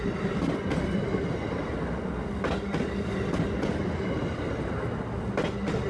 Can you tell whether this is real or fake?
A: real